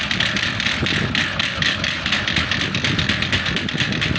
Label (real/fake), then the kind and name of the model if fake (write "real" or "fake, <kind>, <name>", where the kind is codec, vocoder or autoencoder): real